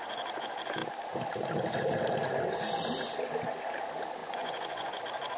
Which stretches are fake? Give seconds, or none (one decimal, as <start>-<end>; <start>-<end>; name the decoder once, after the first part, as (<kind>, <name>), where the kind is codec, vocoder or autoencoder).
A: 4.2-5.0 (vocoder, Vocos)